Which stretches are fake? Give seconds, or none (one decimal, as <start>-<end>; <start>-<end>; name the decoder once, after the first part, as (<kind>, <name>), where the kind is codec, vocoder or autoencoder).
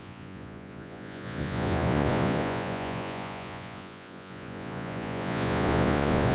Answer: 0.0-6.3 (vocoder, Vocos)